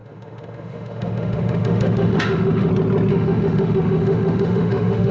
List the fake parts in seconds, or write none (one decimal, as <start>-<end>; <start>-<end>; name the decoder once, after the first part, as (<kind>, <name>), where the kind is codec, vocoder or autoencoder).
0.0-2.7 (autoencoder, DAC-VAE); 3.1-5.1